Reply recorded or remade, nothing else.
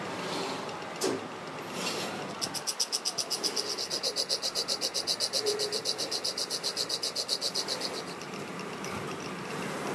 recorded